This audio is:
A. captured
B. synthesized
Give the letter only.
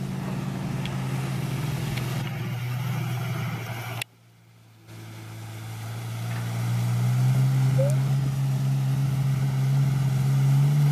A